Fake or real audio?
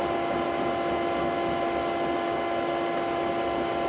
real